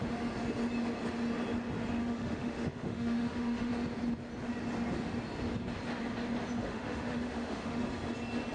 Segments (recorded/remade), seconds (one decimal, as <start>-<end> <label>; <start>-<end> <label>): 0.0-2.0 recorded; 2.0-3.7 remade; 3.7-6.6 recorded; 6.6-7.8 remade; 7.8-8.5 recorded